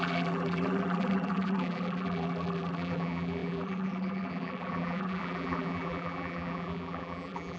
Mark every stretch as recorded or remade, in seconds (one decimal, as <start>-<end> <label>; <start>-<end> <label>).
0.0-7.6 remade